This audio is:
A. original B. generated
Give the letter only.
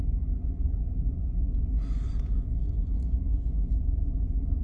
B